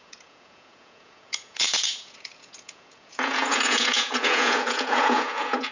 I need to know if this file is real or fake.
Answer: fake